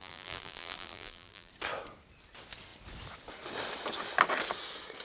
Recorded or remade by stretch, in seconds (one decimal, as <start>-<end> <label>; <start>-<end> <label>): 0.0-1.5 remade; 1.5-5.0 recorded